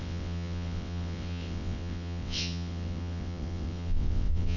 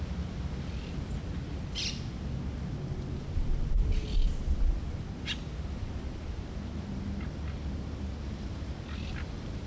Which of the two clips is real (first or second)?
second